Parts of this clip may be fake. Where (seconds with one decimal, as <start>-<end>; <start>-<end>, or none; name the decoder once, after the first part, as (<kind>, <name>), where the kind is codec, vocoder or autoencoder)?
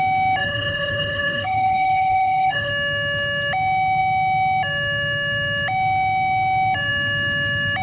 0.4-2.7 (codec, HILCodec)